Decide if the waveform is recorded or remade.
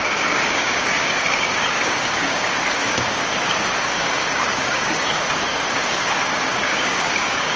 remade